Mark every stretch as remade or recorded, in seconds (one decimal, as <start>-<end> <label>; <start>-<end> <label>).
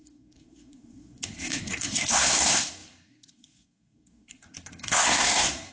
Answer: 0.0-5.7 remade